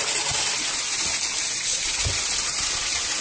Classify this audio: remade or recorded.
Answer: recorded